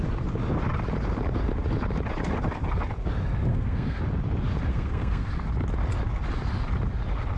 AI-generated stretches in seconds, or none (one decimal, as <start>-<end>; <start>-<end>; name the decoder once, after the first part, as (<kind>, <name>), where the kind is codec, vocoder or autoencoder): 3.5-4.0 (codec, SNAC); 4.7-5.3